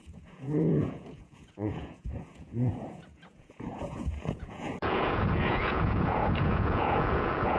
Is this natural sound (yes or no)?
no